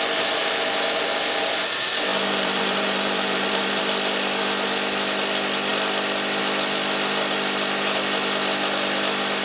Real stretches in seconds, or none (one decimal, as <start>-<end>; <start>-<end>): 0.0-0.4; 1.5-2.1; 3.8-9.4